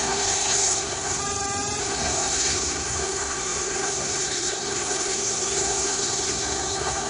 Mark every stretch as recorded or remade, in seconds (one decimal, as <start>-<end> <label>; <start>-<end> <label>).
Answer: 0.0-1.2 remade; 1.2-1.8 recorded; 1.8-7.1 remade